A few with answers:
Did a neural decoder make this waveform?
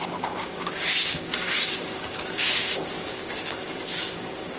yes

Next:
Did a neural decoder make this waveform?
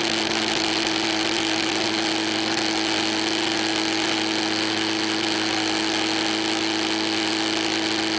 no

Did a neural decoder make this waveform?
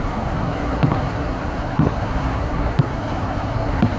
yes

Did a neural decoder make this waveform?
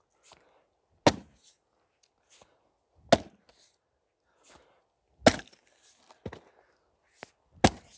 no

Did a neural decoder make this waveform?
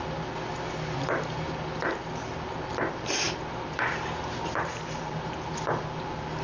no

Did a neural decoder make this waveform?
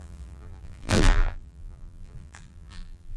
yes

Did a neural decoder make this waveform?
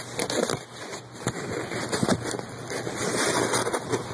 no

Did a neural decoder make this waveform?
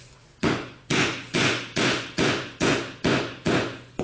yes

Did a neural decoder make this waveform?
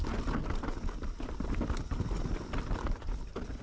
no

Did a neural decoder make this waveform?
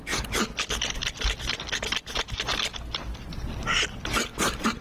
no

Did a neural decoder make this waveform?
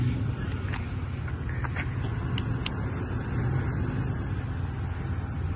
no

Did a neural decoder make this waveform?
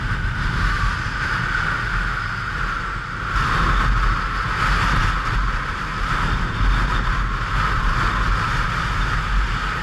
no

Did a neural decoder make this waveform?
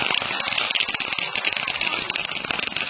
no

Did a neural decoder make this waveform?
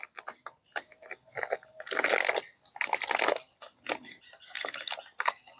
no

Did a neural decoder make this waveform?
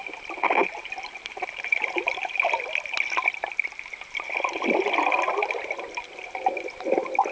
no